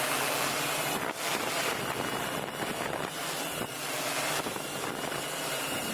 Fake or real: fake